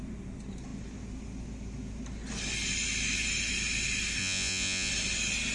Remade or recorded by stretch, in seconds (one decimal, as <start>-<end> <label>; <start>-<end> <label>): 0.0-4.2 recorded; 4.2-4.9 remade; 4.9-5.5 recorded